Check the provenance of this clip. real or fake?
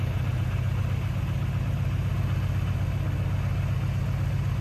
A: real